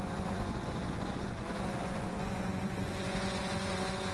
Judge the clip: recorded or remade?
remade